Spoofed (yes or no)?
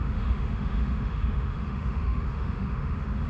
yes